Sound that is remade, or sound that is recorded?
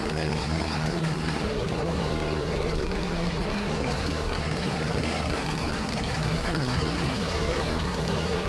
remade